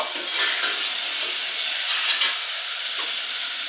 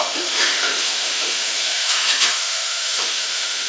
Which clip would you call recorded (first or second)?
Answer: first